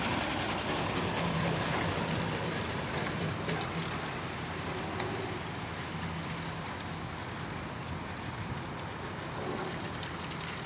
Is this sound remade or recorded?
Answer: recorded